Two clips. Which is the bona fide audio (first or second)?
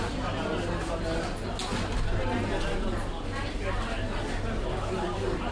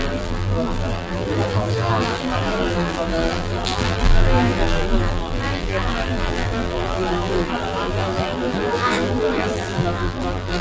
first